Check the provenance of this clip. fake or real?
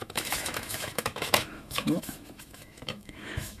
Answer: fake